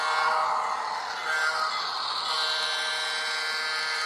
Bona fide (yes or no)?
yes